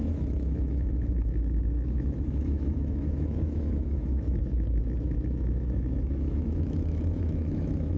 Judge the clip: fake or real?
fake